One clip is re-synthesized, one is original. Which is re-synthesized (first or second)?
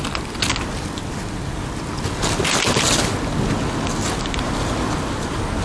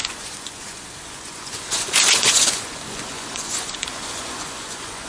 second